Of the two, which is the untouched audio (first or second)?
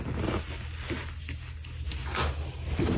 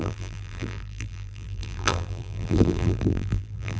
first